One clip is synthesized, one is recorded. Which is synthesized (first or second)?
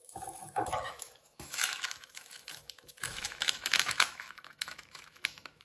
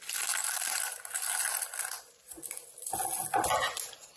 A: first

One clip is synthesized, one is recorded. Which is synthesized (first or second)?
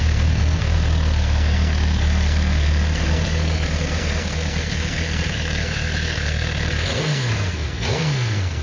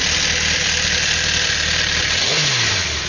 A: first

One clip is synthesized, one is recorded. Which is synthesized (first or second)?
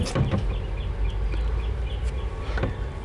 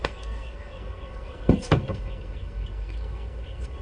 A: second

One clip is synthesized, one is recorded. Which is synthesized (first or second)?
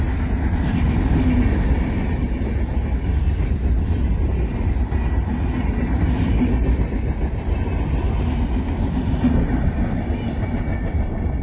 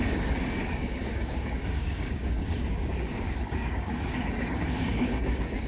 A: second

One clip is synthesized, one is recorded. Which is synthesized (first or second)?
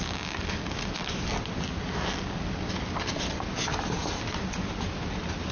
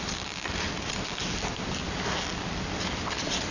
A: second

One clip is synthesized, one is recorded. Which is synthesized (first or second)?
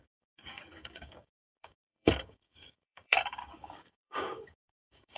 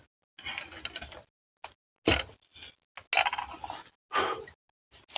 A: first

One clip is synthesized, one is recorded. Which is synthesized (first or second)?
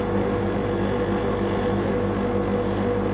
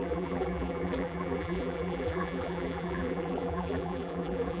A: second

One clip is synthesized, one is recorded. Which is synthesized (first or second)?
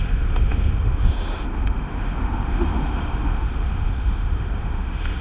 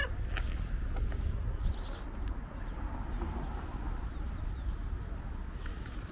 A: first